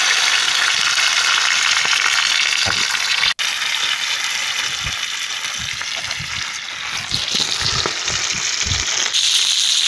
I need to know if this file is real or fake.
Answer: real